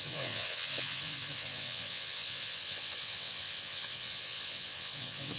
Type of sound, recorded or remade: remade